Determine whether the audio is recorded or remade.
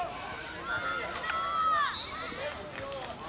recorded